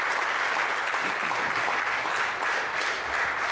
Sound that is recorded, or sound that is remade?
recorded